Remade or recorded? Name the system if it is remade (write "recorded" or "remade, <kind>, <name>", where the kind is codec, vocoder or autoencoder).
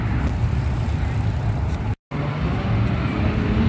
recorded